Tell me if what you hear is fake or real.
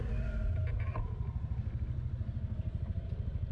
real